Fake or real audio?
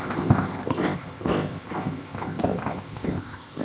fake